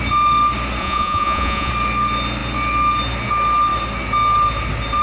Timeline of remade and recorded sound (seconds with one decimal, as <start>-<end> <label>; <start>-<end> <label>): 0.0-0.8 recorded; 0.8-1.7 remade; 1.7-5.0 recorded